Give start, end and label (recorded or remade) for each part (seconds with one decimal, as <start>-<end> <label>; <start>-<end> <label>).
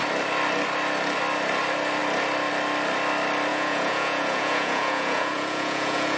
0.0-3.5 recorded; 3.5-6.2 remade